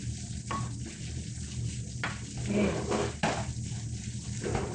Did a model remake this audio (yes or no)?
no